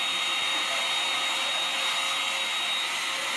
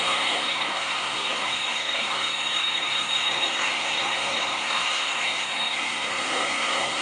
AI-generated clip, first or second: second